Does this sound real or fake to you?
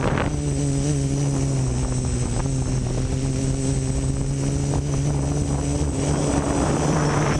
real